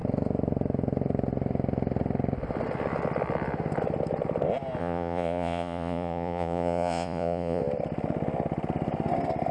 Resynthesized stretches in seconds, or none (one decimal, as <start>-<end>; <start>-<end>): 4.8-7.6